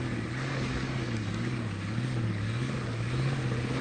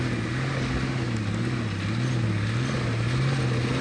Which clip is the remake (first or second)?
first